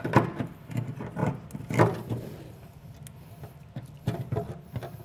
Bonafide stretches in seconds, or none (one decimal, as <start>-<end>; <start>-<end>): 0.0-5.0